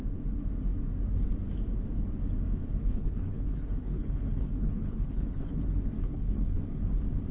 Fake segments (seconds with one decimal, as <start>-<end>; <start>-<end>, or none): 2.8-5.6; 6.0-6.6